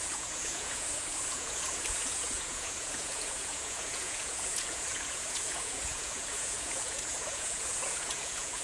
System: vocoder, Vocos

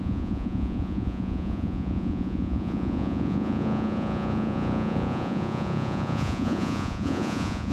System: vocoder, Vocos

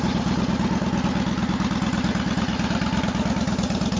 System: none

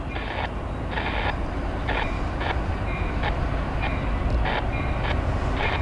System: none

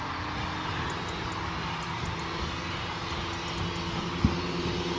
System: none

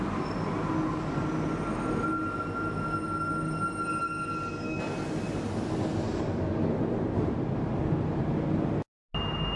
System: none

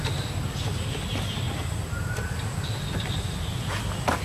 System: none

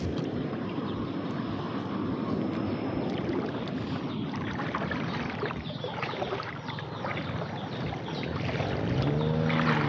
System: none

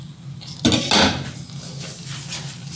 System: none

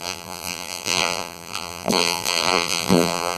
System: vocoder, BigVGAN v2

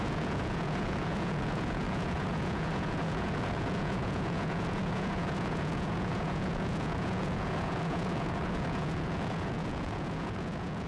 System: vocoder, Vocos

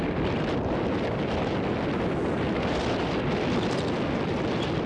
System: none